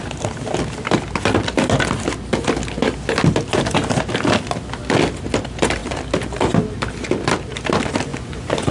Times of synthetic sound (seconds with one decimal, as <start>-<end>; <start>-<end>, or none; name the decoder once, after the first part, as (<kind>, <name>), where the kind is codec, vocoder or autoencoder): 8.1-8.7 (vocoder, Vocos)